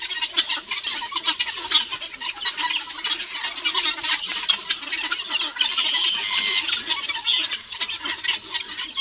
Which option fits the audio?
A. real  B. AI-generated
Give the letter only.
A